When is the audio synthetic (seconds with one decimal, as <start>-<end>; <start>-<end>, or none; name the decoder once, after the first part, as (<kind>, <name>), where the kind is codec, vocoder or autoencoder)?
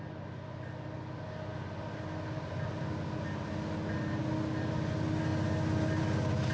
none